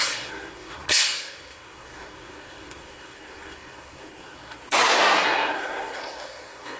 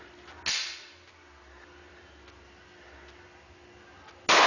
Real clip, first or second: second